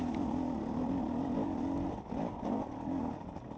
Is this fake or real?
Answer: real